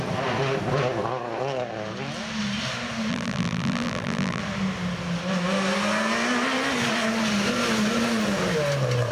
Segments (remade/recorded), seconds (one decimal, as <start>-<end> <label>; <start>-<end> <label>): 0.0-3.1 recorded; 3.1-4.4 remade; 4.4-9.1 recorded